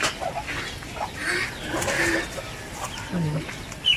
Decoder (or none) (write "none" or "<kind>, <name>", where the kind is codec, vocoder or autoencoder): none